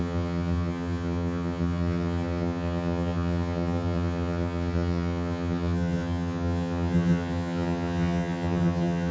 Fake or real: fake